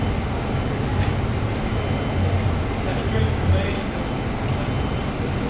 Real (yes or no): yes